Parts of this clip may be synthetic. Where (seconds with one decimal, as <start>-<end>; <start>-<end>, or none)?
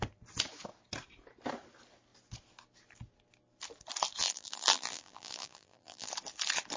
4.2-6.1